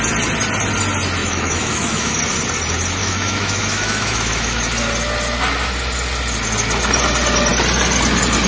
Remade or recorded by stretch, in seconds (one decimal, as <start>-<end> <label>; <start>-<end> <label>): 0.0-1.2 recorded; 1.2-2.2 remade; 2.2-3.0 recorded; 3.0-4.6 remade; 4.6-8.5 recorded